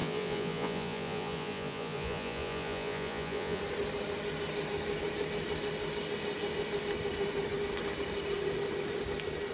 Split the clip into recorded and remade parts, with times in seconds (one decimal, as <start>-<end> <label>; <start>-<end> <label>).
0.0-3.6 remade; 3.6-9.5 recorded